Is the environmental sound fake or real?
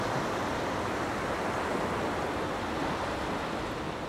real